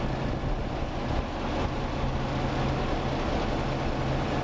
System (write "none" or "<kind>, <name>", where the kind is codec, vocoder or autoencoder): none